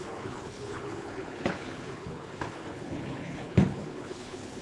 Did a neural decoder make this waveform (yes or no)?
yes